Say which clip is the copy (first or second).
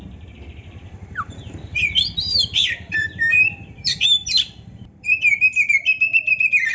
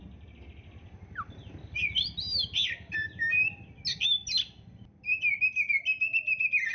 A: first